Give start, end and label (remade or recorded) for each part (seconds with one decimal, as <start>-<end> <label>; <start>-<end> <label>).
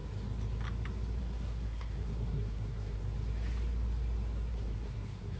0.0-1.2 recorded; 1.2-3.0 remade; 3.0-4.5 recorded; 4.5-5.4 remade